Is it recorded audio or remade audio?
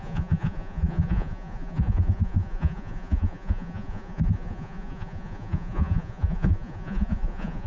remade